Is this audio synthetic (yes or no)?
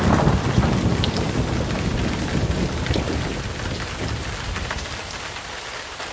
no